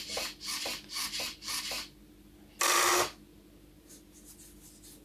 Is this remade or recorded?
recorded